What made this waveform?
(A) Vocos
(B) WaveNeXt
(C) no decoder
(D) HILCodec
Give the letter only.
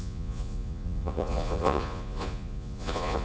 A